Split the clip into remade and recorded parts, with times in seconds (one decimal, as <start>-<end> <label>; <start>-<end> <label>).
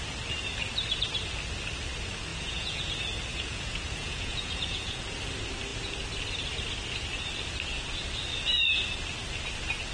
0.0-2.3 recorded; 2.3-2.9 remade; 2.9-3.3 recorded; 3.3-5.0 remade; 5.0-9.9 recorded